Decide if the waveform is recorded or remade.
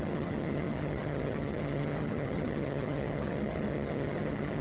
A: remade